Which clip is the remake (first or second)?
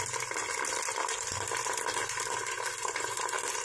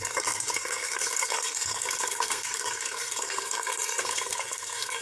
second